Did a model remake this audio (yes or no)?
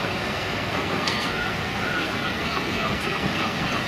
yes